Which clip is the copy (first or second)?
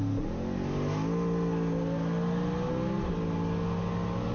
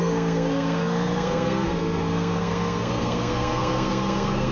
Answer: second